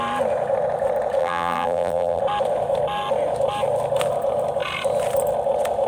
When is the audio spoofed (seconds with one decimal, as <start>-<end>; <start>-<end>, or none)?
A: 1.2-2.2